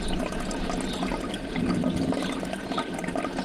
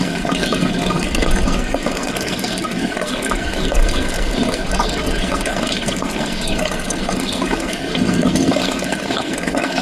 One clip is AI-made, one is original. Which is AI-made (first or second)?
second